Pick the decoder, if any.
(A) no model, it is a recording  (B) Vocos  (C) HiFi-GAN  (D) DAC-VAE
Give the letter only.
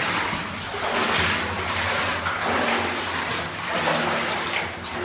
A